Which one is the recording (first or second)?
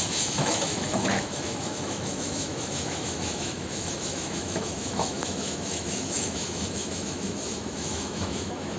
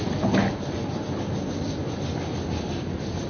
second